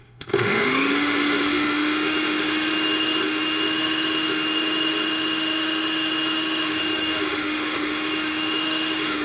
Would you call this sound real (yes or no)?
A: no